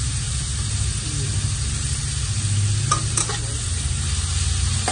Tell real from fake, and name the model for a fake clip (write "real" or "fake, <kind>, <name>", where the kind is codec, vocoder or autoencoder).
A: real